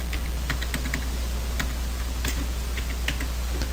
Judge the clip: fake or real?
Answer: real